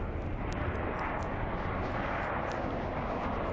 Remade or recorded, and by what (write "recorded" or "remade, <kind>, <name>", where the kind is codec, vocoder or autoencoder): recorded